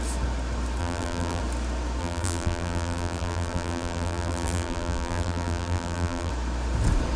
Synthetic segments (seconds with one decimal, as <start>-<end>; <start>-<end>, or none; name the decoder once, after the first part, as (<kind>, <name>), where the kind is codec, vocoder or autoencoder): 0.8-1.4 (vocoder, BigVGAN v2); 2.0-6.3